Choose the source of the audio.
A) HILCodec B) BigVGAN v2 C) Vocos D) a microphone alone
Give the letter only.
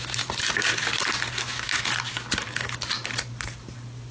D